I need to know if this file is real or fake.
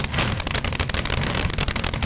real